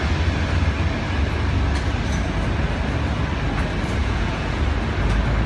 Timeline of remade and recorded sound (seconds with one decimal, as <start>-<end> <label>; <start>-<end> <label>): 0.0-4.0 recorded; 4.0-4.6 remade; 4.6-5.5 recorded